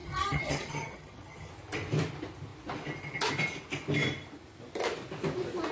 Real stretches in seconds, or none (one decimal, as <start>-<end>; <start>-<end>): 1.5-5.7